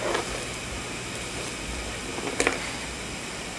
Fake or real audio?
fake